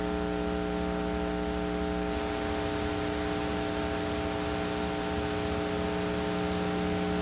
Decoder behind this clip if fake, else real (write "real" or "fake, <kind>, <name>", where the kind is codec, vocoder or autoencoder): real